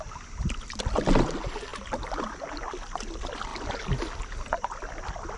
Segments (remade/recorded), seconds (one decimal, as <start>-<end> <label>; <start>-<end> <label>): 0.0-5.4 recorded